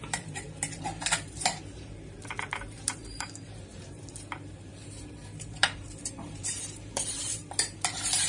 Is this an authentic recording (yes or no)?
no